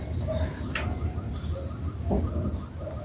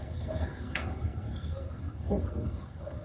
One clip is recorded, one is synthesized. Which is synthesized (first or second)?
second